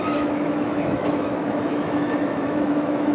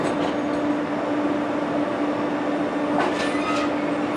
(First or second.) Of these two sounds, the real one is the second